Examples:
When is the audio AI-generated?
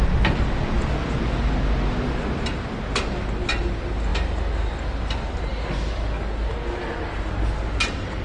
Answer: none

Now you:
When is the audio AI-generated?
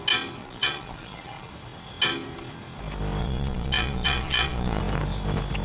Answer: 0.4-1.5; 3.2-4.8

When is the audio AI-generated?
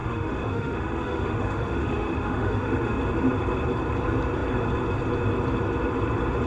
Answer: 0.0-3.0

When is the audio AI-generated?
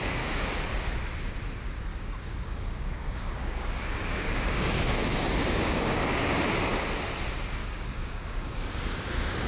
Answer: 0.0-0.5; 1.9-6.4; 7.6-9.5